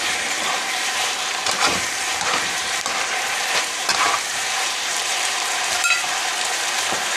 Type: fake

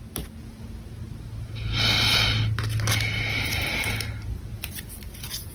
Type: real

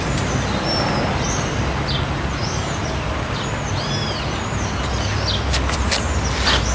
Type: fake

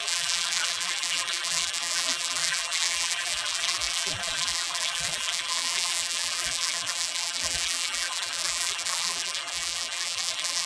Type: fake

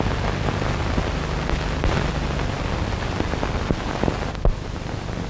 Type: real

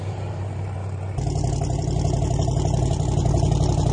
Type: real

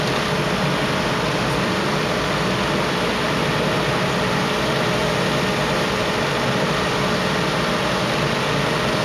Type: real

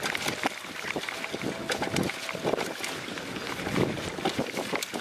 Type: real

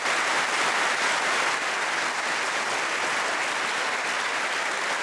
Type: real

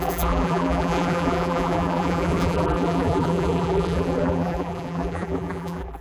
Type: fake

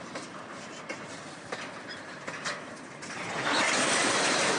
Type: fake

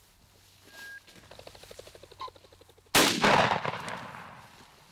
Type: real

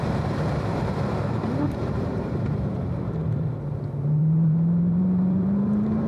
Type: fake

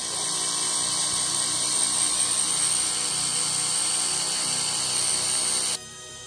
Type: fake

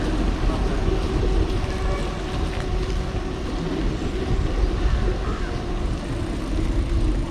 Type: real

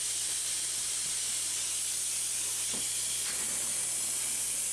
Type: real